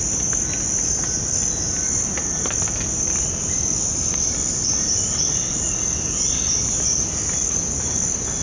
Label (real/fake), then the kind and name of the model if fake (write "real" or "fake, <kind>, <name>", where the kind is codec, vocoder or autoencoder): real